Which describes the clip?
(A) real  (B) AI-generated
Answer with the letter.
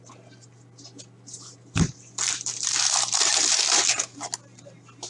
A